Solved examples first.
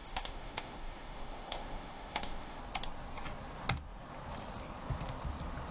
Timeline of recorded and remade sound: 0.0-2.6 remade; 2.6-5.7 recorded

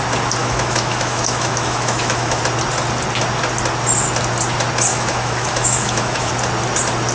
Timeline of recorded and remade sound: 0.0-0.4 recorded; 0.4-2.4 remade; 2.4-4.9 recorded; 4.9-6.3 remade; 6.3-7.1 recorded

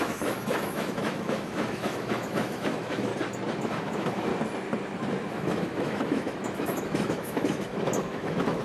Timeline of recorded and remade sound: 0.0-3.1 remade; 3.1-3.6 recorded; 3.6-4.3 remade; 4.3-5.3 recorded; 5.3-8.6 remade

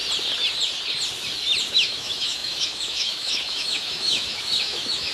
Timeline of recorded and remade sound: 0.0-1.7 recorded; 1.7-5.1 remade

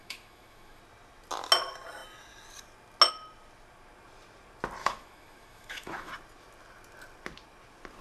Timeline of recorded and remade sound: 0.0-0.8 remade; 0.8-4.8 recorded; 4.8-6.1 remade; 6.1-8.0 recorded

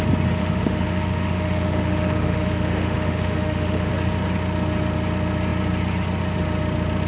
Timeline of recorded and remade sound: 0.0-0.4 recorded; 0.4-3.9 remade; 3.9-7.1 recorded

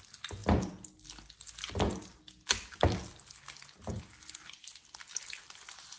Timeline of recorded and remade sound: 0.0-6.0 recorded

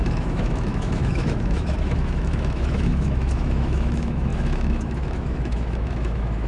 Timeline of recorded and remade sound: 0.0-6.5 remade